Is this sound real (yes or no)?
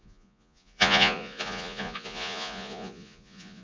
no